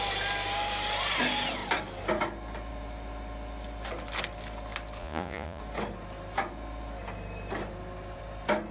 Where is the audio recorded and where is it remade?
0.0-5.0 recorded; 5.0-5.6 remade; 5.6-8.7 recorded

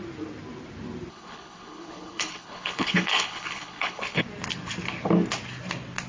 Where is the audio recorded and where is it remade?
0.0-1.1 recorded; 1.1-4.2 remade; 4.2-6.1 recorded